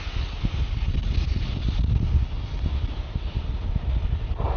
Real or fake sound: real